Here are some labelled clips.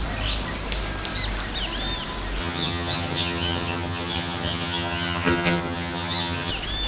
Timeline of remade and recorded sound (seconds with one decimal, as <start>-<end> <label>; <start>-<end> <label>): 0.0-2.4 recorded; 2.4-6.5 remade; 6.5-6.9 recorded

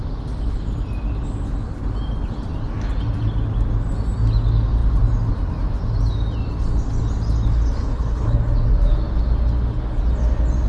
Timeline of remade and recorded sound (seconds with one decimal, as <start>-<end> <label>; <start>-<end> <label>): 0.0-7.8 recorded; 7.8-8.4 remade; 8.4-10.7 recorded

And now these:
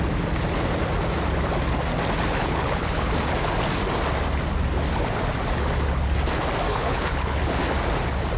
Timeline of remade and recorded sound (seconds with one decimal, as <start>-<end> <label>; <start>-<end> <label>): 0.0-2.4 recorded; 2.4-3.1 remade; 3.1-6.7 recorded; 6.7-7.4 remade; 7.4-8.4 recorded